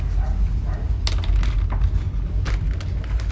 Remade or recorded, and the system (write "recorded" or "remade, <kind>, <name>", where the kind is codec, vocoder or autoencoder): recorded